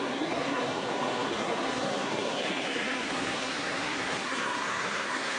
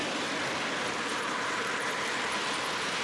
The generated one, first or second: first